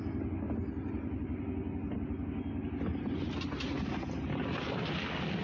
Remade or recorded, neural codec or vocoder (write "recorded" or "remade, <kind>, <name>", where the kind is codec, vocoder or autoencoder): recorded